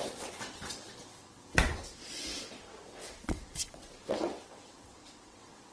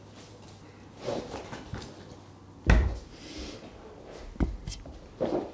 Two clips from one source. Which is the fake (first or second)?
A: first